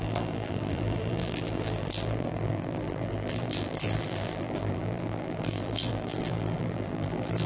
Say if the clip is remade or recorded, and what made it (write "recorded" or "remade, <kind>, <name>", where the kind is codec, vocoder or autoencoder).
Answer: remade, vocoder, BigVGAN v2